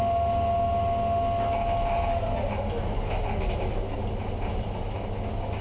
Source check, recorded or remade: recorded